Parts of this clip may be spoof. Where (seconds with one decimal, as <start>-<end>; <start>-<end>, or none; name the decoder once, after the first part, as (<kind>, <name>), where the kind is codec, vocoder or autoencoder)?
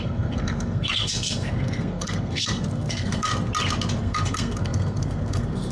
0.0-3.3 (codec, SNAC); 4.0-5.7